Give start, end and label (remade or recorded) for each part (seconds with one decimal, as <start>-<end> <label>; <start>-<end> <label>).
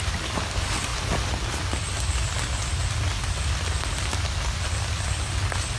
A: 0.0-5.8 recorded